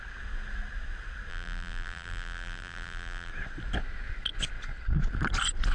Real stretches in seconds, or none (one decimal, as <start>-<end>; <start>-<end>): 0.0-1.3; 3.3-5.7